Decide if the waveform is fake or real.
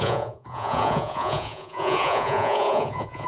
fake